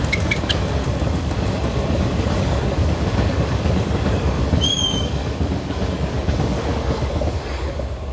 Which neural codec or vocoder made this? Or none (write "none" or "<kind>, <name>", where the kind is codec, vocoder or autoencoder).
codec, DAC